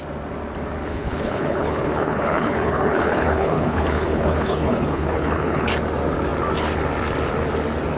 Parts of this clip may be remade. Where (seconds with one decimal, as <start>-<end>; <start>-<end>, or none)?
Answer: 0.9-5.7